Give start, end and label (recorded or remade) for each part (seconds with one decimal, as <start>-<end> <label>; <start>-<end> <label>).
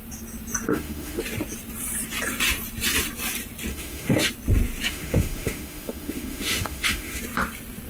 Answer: 0.0-0.7 recorded; 0.7-1.2 remade; 1.2-3.7 recorded; 3.7-4.3 remade; 4.3-4.9 recorded; 4.9-7.2 remade; 7.2-7.9 recorded